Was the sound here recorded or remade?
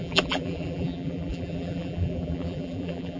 remade